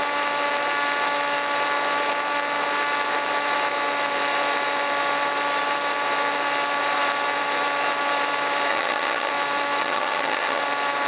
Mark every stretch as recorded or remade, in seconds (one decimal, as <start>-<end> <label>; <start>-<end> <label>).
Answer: 0.0-8.7 recorded; 8.7-9.3 remade; 9.3-9.8 recorded; 9.8-10.6 remade; 10.6-11.1 recorded